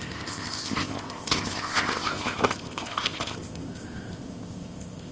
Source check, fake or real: fake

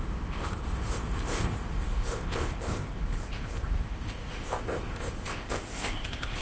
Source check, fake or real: fake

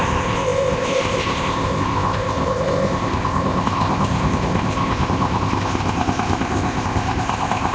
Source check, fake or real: fake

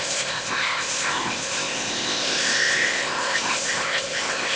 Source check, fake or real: fake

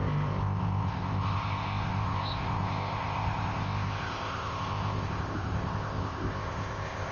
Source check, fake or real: fake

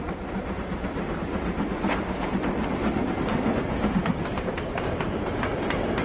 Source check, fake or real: real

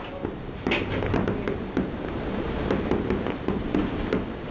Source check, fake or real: real